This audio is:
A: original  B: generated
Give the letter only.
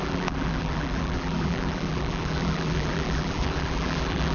B